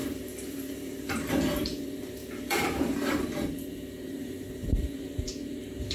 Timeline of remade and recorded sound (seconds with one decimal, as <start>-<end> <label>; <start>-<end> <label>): 0.0-5.9 remade